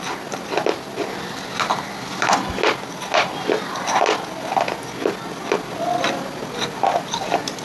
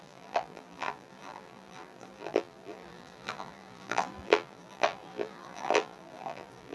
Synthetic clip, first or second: second